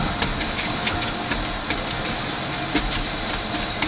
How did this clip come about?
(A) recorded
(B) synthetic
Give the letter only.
A